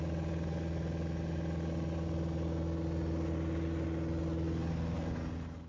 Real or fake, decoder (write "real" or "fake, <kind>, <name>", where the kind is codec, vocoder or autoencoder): real